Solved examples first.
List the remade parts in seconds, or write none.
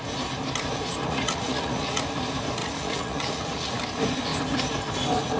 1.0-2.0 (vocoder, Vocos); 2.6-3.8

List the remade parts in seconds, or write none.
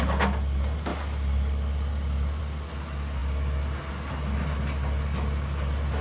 none